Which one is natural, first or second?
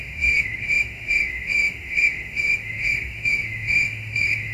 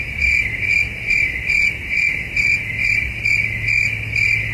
second